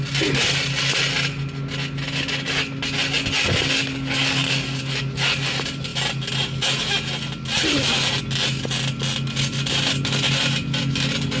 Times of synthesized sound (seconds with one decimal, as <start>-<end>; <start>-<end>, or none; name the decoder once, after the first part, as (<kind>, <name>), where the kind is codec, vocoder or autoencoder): 3.8-5.0 (codec, DAC)